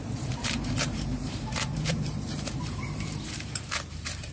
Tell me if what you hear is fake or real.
fake